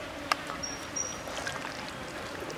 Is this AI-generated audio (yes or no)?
no